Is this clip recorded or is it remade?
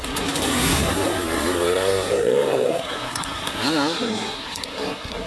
remade